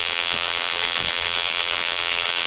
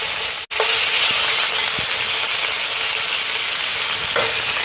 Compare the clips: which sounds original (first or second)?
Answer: second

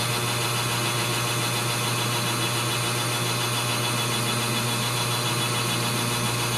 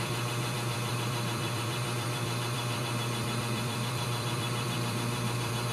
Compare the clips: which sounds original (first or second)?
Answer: first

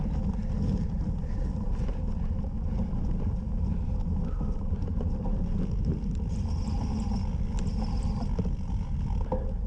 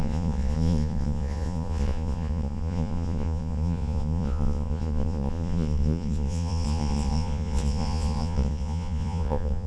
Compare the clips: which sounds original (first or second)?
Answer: first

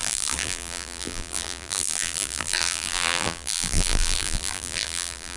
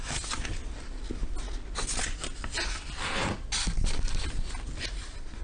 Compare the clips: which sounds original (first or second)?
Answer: second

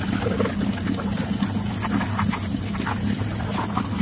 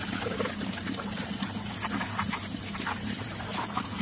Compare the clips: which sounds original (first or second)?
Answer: first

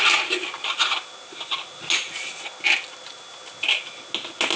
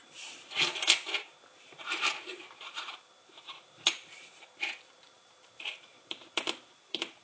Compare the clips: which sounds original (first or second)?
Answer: first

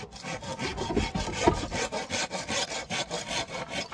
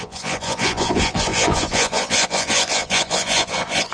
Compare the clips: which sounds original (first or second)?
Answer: first